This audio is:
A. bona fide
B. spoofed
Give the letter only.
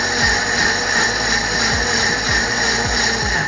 A